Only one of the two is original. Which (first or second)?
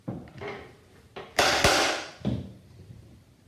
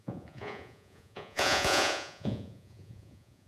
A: first